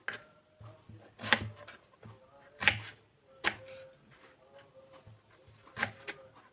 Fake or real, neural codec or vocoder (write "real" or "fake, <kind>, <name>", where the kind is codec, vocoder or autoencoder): real